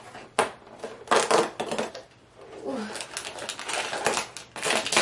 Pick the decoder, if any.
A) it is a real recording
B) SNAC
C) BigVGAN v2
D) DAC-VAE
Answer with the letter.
A